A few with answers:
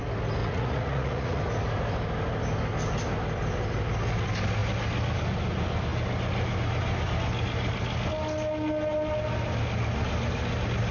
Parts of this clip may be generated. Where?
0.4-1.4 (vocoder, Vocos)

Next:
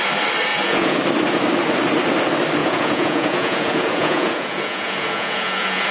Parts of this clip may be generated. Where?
0.5-1.0 (vocoder, Vocos); 2.6-5.9

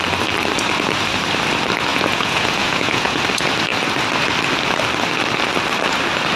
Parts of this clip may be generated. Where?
1.9-3.2 (vocoder, Vocos)

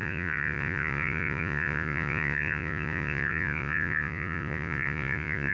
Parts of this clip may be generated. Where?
0.0-5.5 (vocoder, Vocos)

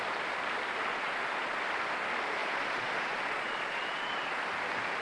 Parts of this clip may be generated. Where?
0.9-1.6 (vocoder, Vocos); 2.4-4.4

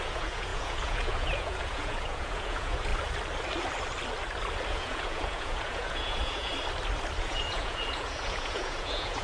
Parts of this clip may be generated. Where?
0.0-2.9 (vocoder, Vocos); 4.7-6.5; 7.2-9.2

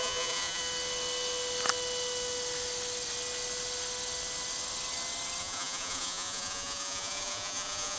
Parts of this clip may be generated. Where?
0.0-0.6 (vocoder, Vocos); 5.4-8.0